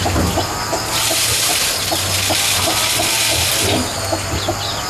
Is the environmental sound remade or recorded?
recorded